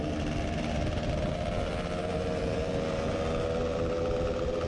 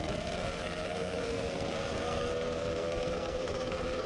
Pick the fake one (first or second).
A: second